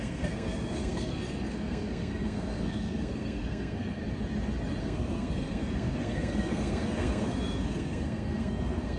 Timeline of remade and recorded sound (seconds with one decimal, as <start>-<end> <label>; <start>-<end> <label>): 0.0-4.0 remade; 4.0-4.8 recorded; 4.8-9.0 remade